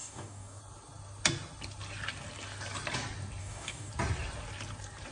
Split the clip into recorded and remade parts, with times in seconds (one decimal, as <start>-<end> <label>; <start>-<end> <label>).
0.0-0.6 remade; 0.6-3.4 recorded; 3.4-3.9 remade; 3.9-5.1 recorded